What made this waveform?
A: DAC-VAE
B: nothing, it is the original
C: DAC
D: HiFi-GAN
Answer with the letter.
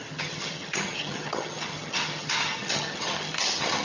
D